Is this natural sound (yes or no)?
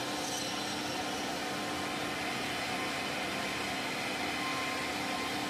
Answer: yes